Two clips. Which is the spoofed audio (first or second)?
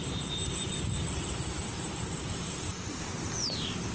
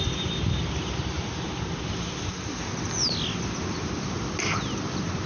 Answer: first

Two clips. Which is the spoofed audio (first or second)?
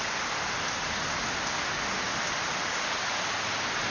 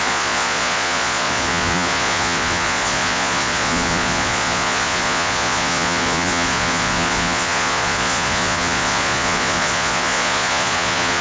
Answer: second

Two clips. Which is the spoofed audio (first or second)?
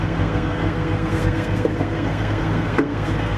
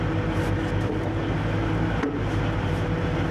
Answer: first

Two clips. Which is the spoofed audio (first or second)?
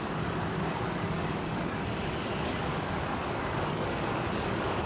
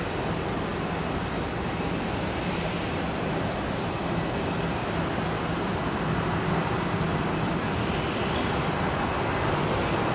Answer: first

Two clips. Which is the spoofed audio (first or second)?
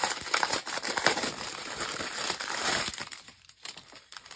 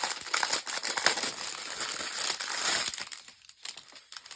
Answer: first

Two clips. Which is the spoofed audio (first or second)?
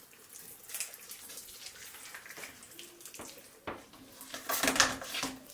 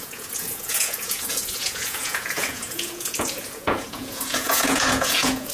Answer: second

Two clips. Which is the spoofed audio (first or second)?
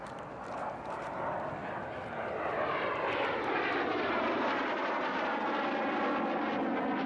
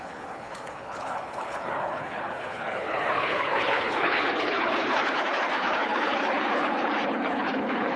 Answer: second